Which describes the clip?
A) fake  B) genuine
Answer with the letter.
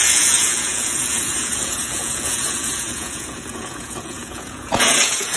A